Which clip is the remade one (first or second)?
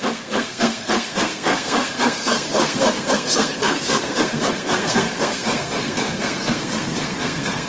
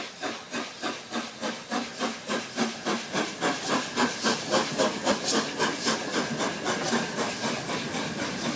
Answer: first